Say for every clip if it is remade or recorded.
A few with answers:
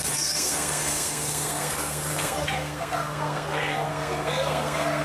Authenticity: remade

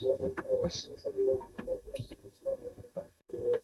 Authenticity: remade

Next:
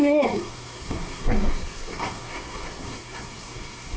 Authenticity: remade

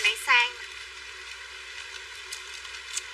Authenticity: recorded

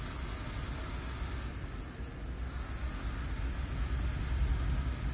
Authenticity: recorded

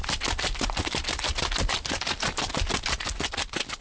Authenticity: recorded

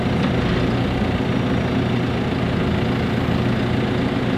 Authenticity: recorded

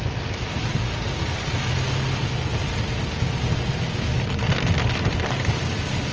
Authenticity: recorded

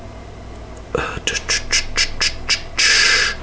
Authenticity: recorded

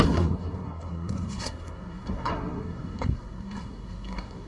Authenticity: remade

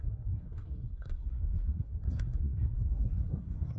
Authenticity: remade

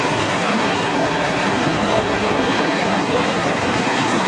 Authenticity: remade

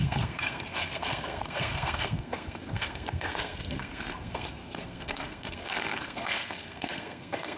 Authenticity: remade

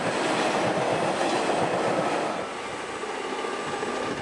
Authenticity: recorded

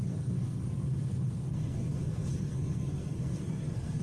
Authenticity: remade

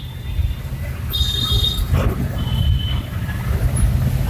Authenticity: recorded